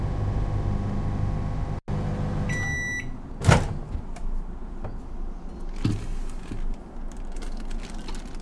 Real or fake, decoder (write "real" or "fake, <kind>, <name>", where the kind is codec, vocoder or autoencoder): real